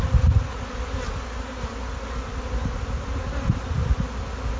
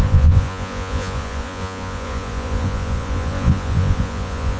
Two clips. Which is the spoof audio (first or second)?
second